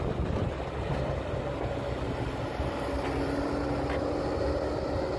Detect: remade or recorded recorded